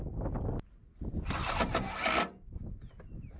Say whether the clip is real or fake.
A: real